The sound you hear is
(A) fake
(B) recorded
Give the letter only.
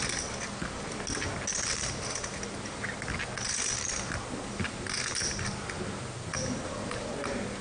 B